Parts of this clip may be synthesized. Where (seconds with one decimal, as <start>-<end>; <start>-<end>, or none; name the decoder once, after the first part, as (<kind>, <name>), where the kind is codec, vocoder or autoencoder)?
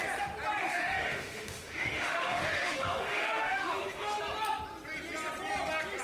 0.6-4.2 (autoencoder, DAC-VAE)